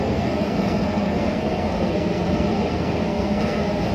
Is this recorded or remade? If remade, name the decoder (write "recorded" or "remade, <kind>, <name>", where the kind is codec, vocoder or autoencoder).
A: remade, codec, SNAC